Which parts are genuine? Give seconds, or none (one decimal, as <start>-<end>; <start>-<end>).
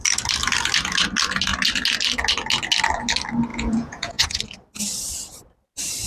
0.0-3.5; 4.4-6.1